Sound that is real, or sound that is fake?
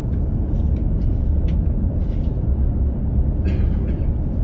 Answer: real